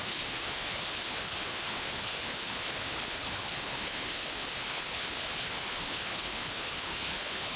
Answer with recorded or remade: remade